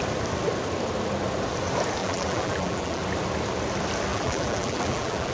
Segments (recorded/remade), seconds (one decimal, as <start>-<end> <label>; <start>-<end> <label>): 0.0-2.0 recorded; 2.0-3.0 remade; 3.0-4.1 recorded; 4.1-5.3 remade